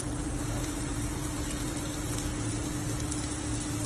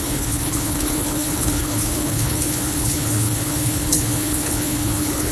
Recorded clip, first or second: first